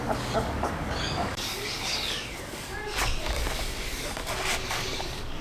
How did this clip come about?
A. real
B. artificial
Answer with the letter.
B